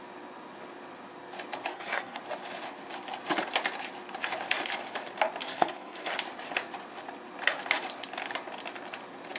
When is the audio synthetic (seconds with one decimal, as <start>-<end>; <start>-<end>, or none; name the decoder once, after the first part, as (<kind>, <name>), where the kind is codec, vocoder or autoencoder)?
1.7-2.2 (codec, SNAC); 5.4-6.1